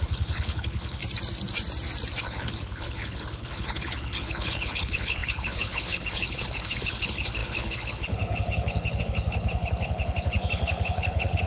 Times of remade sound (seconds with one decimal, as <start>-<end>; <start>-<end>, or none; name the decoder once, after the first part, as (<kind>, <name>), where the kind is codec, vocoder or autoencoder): 0.0-1.0 (codec, HILCodec); 2.2-11.5